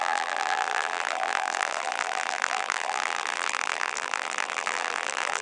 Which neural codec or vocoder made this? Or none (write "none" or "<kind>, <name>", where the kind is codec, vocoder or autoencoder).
vocoder, BigVGAN v2